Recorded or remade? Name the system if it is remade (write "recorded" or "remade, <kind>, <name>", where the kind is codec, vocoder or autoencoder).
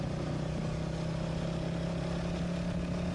recorded